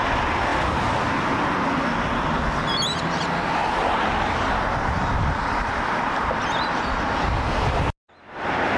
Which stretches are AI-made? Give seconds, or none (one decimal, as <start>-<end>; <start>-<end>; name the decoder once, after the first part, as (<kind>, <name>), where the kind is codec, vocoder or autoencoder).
none